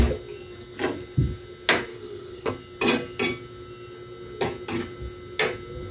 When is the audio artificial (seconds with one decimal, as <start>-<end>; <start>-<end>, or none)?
1.9-2.5